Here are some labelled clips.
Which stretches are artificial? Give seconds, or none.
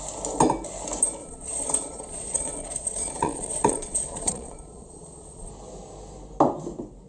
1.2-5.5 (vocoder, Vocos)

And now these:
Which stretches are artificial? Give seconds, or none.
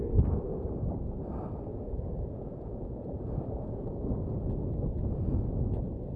1.7-3.3 (vocoder, Vocos); 4.9-5.8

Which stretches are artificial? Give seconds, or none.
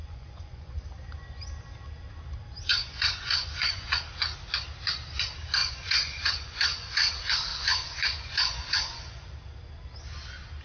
0.0-0.8 (vocoder, Vocos); 2.7-4.0; 5.6-7.1; 7.5-9.3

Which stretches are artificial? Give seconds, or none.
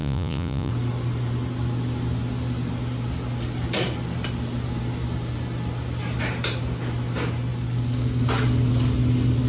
0.0-0.7 (vocoder, Vocos)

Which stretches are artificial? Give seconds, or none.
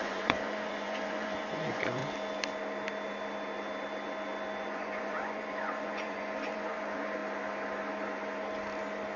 0.0-2.0 (vocoder, Vocos); 4.6-7.2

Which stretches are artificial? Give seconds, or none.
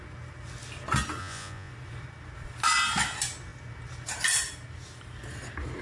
1.2-1.7 (vocoder, Vocos)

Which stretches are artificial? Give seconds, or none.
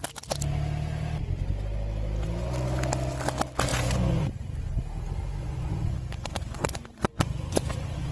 3.7-4.3 (vocoder, Vocos); 5.4-8.1